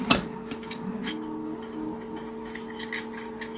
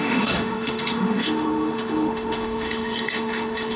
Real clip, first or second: first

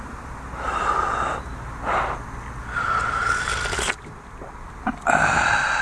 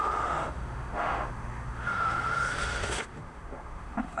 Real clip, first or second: first